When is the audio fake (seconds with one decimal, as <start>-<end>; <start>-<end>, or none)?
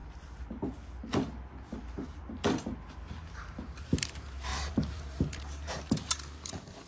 3.3-6.9